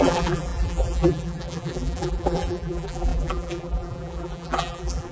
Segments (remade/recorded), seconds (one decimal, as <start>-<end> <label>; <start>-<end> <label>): 0.0-5.1 remade